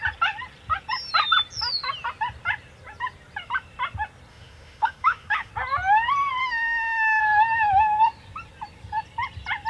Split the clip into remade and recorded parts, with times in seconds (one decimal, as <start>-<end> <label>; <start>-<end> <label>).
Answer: 0.0-4.3 recorded; 4.3-5.5 remade; 5.5-6.4 recorded; 6.4-7.2 remade; 7.2-9.7 recorded